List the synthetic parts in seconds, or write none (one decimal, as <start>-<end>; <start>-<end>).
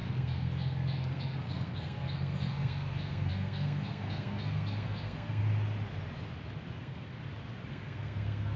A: 0.0-5.4; 6.8-7.2; 7.7-8.6